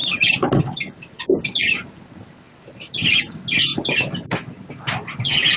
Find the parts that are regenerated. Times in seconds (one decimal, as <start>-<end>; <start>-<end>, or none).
none